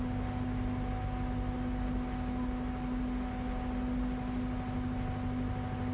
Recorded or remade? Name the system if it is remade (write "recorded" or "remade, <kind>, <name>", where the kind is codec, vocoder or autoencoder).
recorded